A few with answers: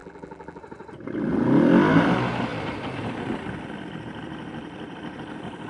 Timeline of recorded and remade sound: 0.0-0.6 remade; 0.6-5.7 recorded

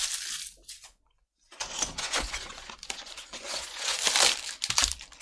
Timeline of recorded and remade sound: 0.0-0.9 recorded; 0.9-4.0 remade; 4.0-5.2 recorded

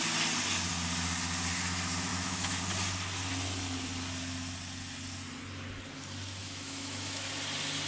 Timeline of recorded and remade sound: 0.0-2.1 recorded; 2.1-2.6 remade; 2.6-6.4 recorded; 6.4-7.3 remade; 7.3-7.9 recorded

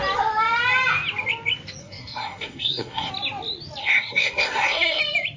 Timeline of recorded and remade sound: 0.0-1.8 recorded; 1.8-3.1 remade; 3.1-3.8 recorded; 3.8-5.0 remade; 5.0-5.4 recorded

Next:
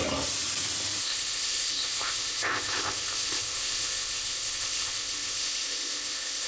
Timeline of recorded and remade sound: 0.0-1.0 recorded; 1.0-6.5 remade